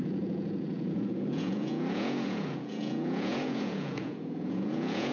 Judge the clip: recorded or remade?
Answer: remade